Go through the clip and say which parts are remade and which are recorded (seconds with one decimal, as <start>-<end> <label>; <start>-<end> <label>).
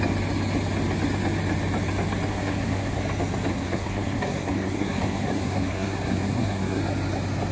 0.0-2.3 recorded; 2.3-3.0 remade; 3.0-3.5 recorded; 3.5-6.8 remade; 6.8-7.5 recorded